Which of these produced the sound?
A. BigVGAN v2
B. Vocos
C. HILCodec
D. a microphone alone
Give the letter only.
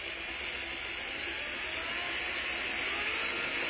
D